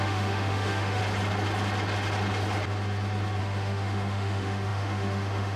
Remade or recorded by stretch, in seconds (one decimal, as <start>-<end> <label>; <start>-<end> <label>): 0.0-1.0 remade; 1.0-3.4 recorded; 3.4-5.6 remade